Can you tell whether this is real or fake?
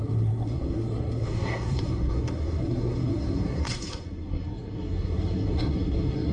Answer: fake